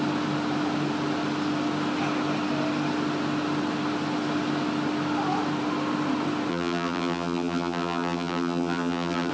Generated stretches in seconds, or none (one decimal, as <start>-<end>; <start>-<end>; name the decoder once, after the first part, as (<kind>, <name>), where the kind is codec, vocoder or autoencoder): 6.5-9.3 (vocoder, BigVGAN v2)